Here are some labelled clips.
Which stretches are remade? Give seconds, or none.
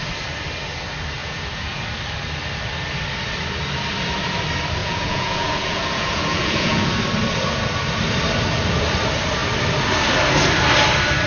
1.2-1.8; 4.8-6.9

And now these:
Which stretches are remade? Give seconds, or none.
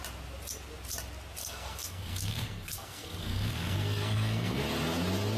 1.4-4.6